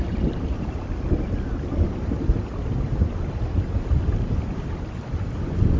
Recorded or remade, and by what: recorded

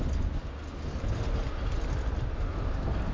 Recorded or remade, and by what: recorded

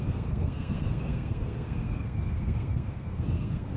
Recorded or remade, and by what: remade, codec, SNAC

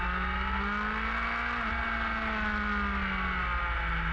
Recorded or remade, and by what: recorded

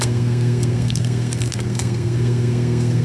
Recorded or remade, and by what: remade, codec, SNAC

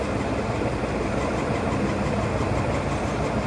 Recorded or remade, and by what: recorded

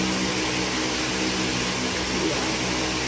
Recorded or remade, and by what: recorded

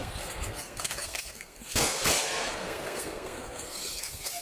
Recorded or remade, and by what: remade, codec, SNAC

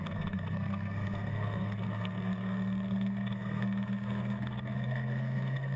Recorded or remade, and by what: remade, codec, SNAC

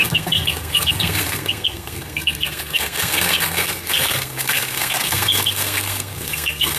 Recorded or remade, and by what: remade, codec, SNAC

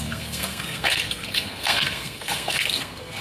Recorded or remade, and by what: remade, codec, SNAC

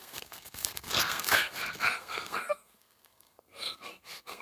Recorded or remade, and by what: remade, codec, SNAC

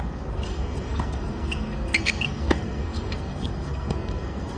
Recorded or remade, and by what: remade, codec, SNAC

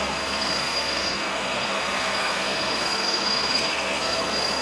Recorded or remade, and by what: remade, codec, SNAC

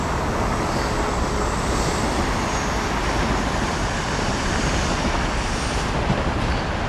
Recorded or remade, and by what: recorded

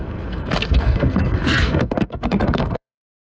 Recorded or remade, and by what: remade, codec, SNAC